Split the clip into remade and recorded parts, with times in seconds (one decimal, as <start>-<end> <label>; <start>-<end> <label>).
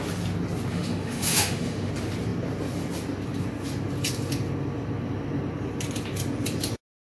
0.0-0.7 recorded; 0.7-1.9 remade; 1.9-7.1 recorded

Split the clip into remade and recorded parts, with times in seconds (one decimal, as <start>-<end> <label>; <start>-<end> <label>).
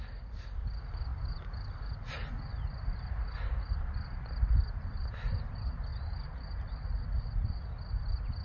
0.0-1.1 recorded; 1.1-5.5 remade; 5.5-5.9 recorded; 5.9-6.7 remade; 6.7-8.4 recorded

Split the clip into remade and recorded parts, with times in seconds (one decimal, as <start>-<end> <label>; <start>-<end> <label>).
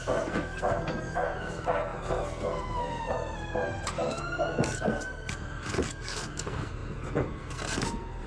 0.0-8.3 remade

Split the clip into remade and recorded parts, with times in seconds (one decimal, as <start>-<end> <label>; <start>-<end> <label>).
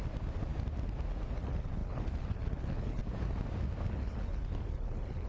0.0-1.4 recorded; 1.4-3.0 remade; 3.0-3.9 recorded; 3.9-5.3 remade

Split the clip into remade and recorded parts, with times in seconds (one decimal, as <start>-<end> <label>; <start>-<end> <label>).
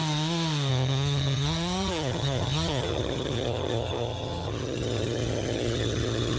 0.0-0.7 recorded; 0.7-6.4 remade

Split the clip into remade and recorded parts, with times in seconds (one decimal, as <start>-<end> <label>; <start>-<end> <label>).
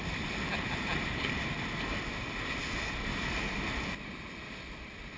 0.0-5.2 recorded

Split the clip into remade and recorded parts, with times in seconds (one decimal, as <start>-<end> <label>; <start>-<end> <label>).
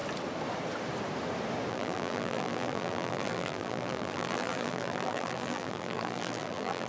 0.0-1.7 recorded; 1.7-6.9 remade